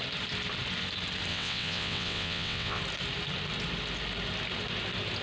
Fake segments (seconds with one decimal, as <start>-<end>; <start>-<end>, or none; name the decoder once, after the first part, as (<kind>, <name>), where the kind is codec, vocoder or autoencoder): 1.3-2.8 (vocoder, WaveNeXt)